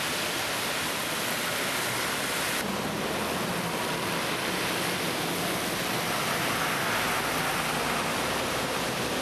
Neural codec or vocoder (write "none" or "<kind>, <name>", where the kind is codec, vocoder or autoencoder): none